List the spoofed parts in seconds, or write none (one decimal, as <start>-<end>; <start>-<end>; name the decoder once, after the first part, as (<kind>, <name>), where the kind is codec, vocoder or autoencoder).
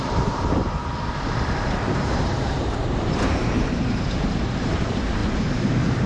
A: 0.0-6.1 (vocoder, BigVGAN v2)